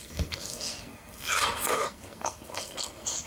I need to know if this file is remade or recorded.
remade